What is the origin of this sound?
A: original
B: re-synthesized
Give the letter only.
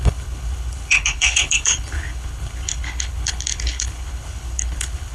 B